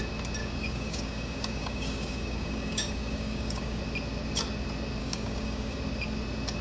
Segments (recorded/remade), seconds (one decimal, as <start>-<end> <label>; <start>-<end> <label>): 0.0-0.4 recorded; 0.4-3.8 remade; 3.8-5.0 recorded; 5.0-5.8 remade; 5.8-6.6 recorded